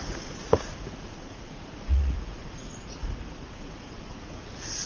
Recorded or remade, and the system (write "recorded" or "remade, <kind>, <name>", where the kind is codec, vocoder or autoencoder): remade, vocoder, Vocos